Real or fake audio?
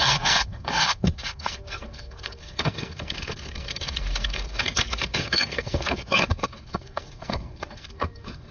fake